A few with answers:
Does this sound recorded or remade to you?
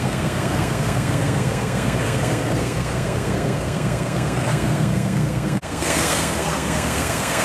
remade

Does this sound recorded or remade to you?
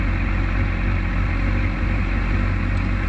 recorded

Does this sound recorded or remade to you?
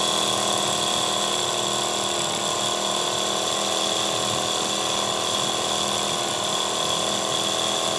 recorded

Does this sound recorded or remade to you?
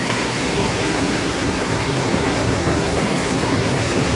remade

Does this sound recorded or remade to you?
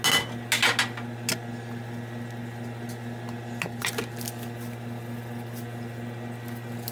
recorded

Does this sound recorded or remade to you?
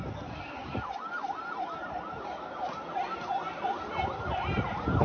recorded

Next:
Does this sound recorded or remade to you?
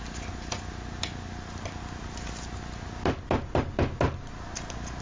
recorded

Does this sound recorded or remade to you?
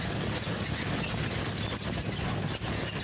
recorded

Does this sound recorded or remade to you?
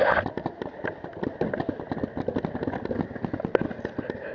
recorded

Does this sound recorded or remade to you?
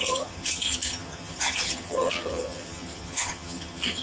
remade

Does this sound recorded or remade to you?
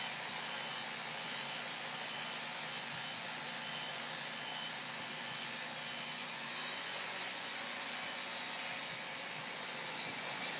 remade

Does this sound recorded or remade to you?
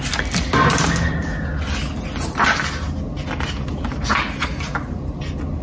recorded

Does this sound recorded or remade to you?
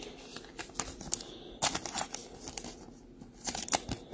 recorded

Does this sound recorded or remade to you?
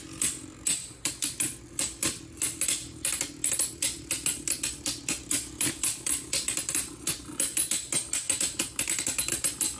recorded